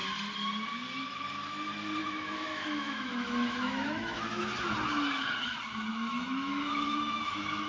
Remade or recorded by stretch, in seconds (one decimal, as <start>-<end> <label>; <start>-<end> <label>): 0.0-2.0 recorded; 2.0-4.5 remade; 4.5-5.9 recorded; 5.9-7.7 remade